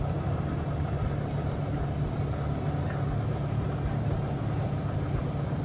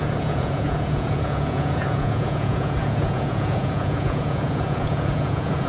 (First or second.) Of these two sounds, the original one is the first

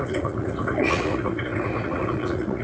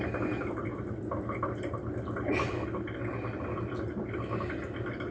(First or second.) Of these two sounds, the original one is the second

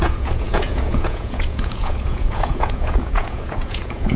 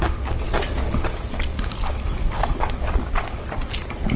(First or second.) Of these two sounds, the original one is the second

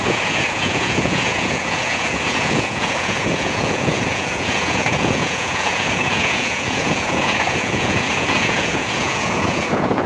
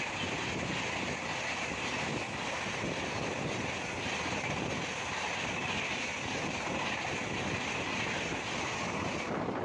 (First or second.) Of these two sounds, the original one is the second